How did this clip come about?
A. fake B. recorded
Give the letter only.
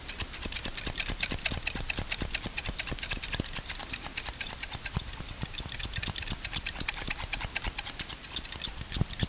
B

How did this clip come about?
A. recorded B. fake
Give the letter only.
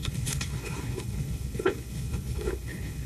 B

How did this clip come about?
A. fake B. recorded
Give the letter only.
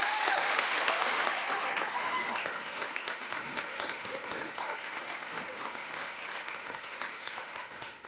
A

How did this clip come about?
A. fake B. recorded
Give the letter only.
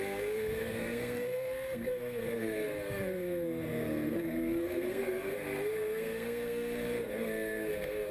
A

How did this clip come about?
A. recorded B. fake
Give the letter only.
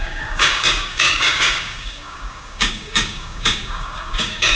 B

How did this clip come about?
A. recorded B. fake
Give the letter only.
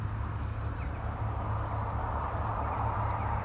A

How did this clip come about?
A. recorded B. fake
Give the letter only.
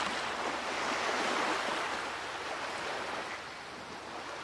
A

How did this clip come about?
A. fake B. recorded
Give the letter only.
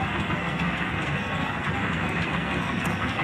A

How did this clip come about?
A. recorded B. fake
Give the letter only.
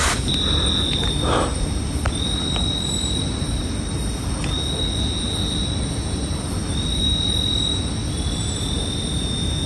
A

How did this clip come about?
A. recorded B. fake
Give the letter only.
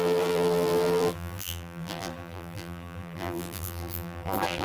B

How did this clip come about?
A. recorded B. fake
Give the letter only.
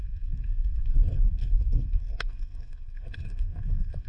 B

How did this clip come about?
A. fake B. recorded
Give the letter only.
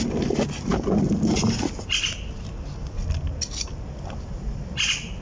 B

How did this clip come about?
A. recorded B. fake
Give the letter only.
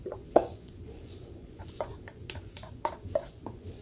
B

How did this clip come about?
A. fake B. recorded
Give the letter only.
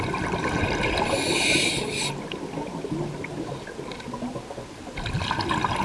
B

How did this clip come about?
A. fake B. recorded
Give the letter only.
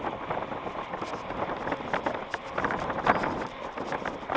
B